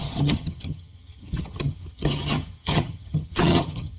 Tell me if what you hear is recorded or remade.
remade